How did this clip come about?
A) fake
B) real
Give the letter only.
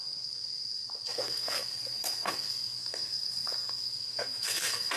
A